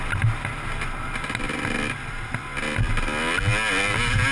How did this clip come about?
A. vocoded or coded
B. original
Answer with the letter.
B